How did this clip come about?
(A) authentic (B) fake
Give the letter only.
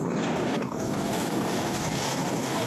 B